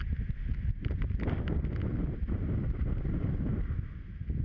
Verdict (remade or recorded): recorded